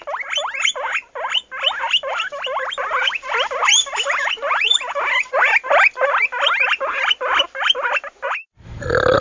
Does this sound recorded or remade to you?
remade